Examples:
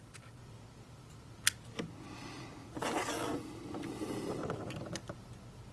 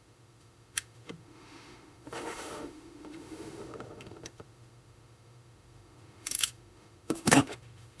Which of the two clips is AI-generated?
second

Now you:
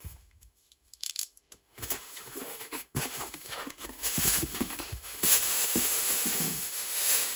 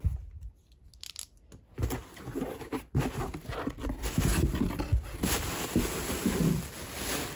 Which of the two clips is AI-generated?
first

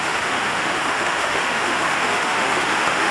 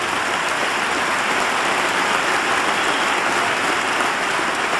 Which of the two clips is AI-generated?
first